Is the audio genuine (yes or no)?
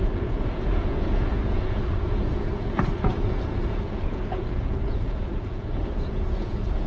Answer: no